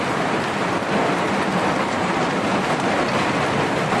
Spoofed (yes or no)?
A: no